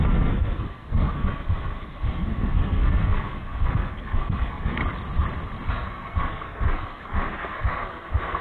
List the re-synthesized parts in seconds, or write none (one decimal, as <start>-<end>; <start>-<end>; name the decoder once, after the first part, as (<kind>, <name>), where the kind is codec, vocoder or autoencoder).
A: 0.0-4.8 (codec, SNAC); 5.7-8.4